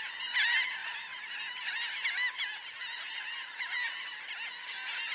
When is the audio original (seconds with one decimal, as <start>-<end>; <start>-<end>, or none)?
0.0-0.8; 1.7-3.1; 4.2-5.1